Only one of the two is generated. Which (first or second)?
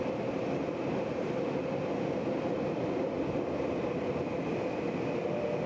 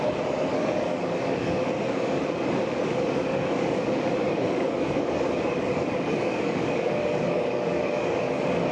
second